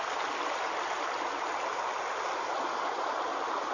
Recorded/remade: recorded